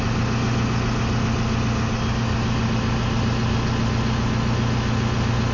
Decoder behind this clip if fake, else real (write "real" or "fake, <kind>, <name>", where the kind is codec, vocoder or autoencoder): real